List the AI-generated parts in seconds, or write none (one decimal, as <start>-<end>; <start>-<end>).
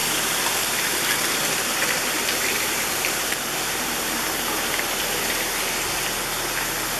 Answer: 0.0-4.2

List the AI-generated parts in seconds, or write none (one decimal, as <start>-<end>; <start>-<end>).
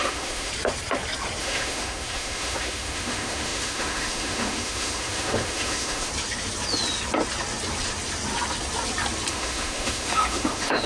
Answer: 0.0-0.5; 1.4-6.1; 9.3-10.9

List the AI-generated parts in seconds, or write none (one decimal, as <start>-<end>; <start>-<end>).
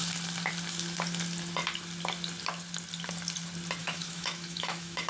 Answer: 3.8-5.1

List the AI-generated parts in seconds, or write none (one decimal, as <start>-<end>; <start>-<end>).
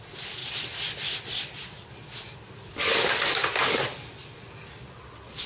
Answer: none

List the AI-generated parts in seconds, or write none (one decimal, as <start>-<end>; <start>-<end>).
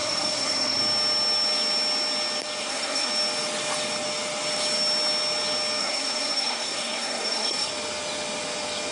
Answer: 0.0-0.8; 2.6-3.1; 5.8-7.7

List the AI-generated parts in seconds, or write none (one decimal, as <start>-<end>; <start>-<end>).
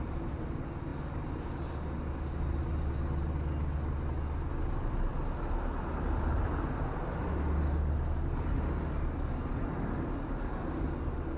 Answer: none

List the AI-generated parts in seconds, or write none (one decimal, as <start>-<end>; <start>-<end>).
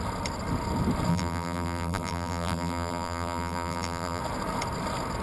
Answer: 1.1-4.2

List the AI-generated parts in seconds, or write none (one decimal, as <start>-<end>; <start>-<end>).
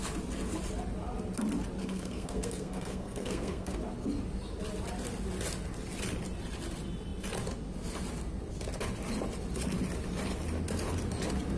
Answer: 1.8-3.8